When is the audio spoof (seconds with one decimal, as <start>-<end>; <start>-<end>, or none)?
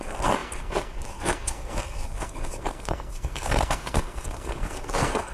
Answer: 0.0-5.3